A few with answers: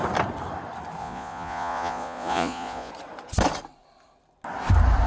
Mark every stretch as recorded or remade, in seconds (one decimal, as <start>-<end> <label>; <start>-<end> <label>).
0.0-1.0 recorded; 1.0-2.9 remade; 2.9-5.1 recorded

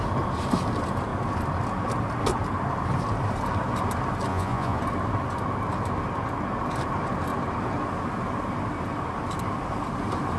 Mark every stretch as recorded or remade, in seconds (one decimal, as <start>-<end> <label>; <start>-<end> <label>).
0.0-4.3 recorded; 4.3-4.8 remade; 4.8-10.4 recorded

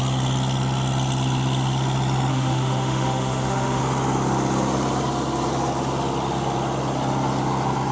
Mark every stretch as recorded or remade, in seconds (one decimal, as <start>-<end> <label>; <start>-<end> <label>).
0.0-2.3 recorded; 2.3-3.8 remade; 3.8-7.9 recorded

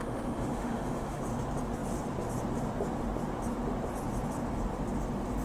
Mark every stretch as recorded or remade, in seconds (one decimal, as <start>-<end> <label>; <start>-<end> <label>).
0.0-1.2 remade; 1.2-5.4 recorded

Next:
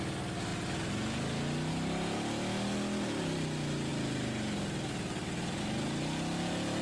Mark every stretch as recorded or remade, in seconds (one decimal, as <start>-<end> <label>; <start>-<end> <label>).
0.0-6.8 recorded